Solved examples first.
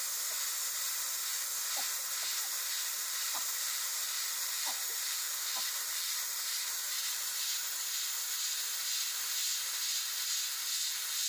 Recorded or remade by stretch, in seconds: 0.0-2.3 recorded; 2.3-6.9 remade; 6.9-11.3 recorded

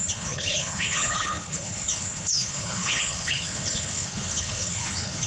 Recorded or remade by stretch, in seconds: 0.0-5.3 remade

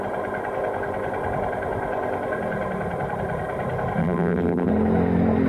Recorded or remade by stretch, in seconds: 0.0-4.0 recorded; 4.0-4.7 remade; 4.7-5.5 recorded